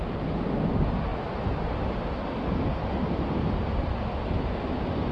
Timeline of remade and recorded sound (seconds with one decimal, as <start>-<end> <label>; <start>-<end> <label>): 0.0-5.1 recorded